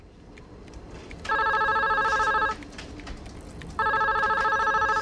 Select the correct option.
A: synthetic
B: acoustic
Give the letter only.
A